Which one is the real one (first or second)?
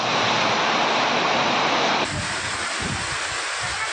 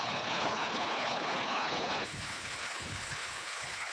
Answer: first